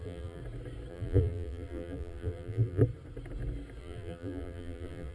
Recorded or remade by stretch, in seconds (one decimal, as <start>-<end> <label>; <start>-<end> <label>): 0.0-0.4 remade; 0.4-0.9 recorded; 0.9-2.8 remade; 2.8-3.8 recorded; 3.8-5.1 remade